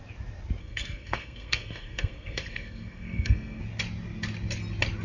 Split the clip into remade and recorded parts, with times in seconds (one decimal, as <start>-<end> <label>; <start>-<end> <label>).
0.0-0.6 recorded; 0.6-3.6 remade; 3.6-5.0 recorded

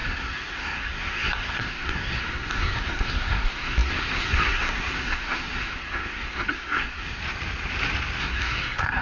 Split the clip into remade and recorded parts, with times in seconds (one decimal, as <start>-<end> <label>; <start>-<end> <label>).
0.0-7.2 remade; 7.2-8.2 recorded; 8.2-9.0 remade